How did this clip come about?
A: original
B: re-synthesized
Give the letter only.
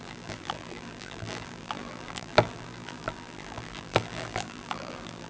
B